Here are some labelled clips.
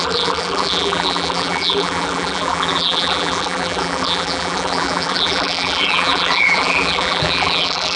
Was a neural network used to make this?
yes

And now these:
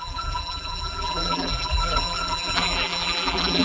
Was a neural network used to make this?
yes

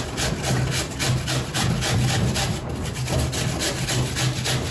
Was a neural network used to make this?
no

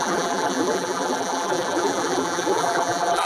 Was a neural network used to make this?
yes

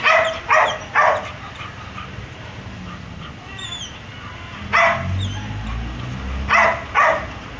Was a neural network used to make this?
no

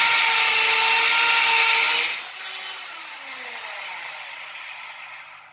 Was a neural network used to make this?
no